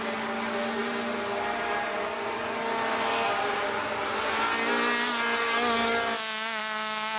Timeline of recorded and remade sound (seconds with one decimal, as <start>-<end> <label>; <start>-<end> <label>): 0.0-7.2 recorded